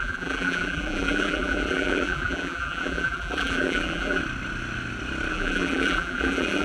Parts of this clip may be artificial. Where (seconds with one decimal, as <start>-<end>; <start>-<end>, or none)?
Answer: 0.0-4.2; 5.3-6.6